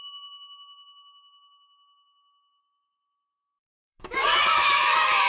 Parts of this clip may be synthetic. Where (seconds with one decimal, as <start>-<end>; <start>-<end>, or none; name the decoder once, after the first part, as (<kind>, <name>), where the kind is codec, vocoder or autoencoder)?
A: 2.6-5.3 (autoencoder, DAC-VAE)

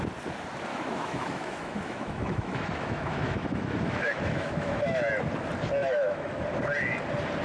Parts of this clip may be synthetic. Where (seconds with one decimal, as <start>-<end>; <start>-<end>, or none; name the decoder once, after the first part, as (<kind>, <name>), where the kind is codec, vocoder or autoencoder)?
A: 0.7-5.1 (autoencoder, DAC-VAE); 5.8-6.4

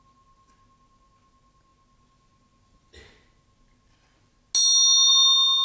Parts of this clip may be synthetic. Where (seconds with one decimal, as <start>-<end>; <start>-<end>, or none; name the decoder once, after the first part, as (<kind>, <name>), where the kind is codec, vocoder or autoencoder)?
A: none